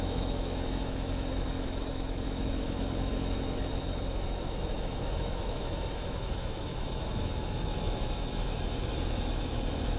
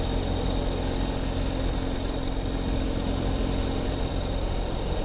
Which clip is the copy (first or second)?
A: first